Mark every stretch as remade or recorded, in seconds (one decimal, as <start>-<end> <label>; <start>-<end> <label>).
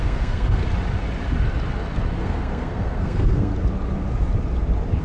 0.0-0.6 remade; 0.6-2.2 recorded; 2.2-3.5 remade; 3.5-5.0 recorded